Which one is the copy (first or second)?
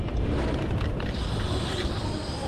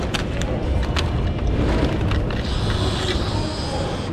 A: first